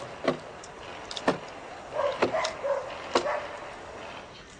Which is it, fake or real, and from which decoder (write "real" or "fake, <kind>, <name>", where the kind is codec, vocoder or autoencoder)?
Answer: real